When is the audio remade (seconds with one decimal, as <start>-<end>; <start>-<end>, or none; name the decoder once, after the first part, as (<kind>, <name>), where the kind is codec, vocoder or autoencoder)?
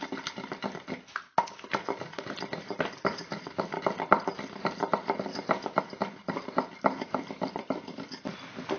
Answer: none